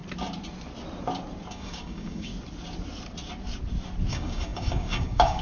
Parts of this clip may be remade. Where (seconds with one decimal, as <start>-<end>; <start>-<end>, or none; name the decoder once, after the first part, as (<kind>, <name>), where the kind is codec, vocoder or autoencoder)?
1.5-2.3 (codec, DAC); 4.1-5.4